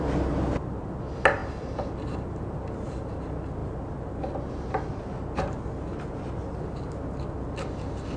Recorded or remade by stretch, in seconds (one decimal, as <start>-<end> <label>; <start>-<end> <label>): 0.0-8.2 recorded

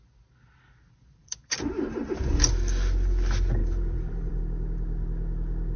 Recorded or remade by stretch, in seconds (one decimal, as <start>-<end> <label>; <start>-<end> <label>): 0.0-1.2 recorded; 1.2-2.5 remade; 2.5-3.6 recorded; 3.6-4.4 remade; 4.4-5.8 recorded

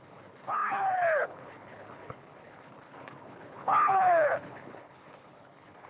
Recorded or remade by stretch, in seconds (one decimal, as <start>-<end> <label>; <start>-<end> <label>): 0.0-5.9 remade

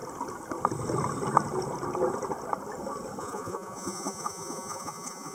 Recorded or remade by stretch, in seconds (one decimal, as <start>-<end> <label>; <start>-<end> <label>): 0.0-3.2 recorded; 3.2-5.3 remade

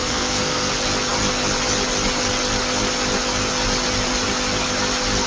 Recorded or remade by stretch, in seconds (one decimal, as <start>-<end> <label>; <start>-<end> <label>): 0.0-0.7 remade; 0.7-5.3 recorded

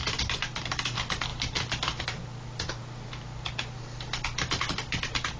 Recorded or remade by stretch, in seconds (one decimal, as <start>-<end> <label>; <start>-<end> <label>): 0.0-5.4 recorded

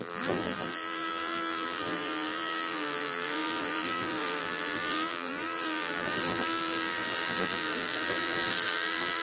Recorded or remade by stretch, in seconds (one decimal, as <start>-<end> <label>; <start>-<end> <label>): 0.0-9.2 remade

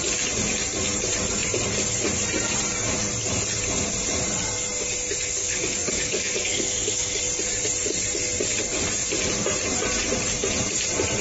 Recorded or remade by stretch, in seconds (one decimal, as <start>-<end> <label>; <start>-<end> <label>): 0.0-5.4 recorded; 5.4-7.2 remade; 7.2-11.2 recorded